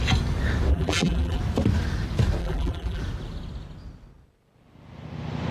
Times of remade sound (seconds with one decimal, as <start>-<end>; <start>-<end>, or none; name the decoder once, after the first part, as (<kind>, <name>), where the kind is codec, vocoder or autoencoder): 0.7-1.4 (vocoder, BigVGAN v2); 2.4-3.0